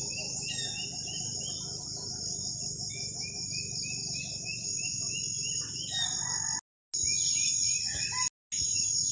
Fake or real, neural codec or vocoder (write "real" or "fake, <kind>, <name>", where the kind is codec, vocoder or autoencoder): real